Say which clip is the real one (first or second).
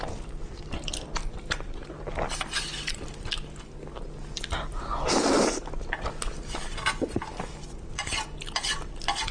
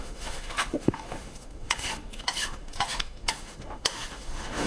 first